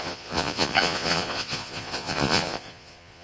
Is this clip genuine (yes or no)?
no